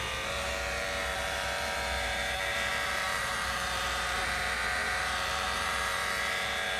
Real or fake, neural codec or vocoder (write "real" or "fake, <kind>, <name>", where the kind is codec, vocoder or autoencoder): fake, vocoder, BigVGAN v2